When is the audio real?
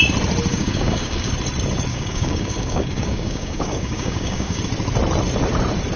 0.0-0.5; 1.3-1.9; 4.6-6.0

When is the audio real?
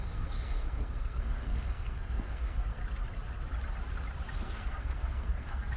2.8-4.3